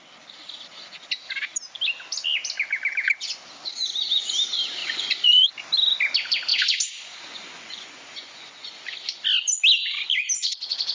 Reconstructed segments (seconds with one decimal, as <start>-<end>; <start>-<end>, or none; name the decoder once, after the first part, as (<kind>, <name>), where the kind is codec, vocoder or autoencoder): 4.8-5.5 (vocoder, Vocos); 6.5-8.7